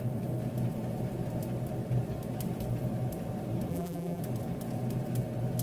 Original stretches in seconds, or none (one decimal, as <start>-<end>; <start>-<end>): 0.0-3.7; 4.2-5.6